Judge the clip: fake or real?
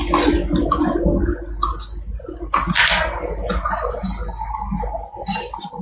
real